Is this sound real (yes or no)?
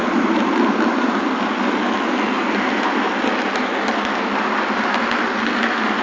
yes